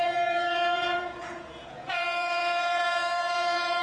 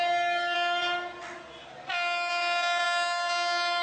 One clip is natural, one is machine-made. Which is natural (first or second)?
second